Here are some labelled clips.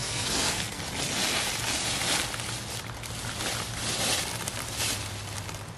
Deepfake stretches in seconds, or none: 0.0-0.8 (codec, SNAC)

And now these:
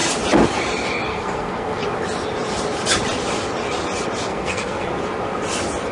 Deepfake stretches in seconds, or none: 1.1-1.8 (codec, SNAC); 4.3-4.9

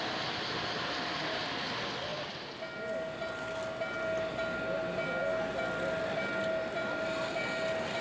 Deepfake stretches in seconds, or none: none

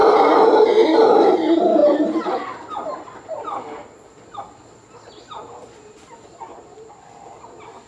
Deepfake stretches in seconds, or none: none

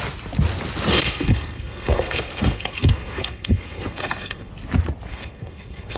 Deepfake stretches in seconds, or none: 0.9-4.5 (codec, SNAC); 5.1-6.0